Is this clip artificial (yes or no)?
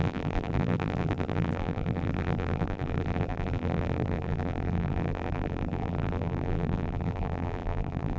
yes